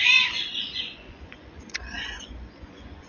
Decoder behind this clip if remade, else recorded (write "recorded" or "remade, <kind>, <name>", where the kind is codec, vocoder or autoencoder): remade, vocoder, Vocos